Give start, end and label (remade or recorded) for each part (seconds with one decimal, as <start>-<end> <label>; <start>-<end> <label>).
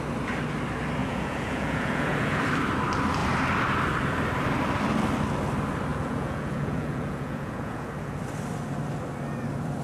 0.0-1.0 recorded; 1.0-2.4 remade; 2.4-5.9 recorded; 5.9-8.2 remade; 8.2-9.8 recorded